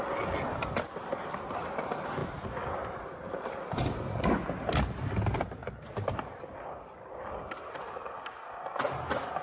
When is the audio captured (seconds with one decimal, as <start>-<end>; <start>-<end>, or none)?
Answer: 0.0-9.4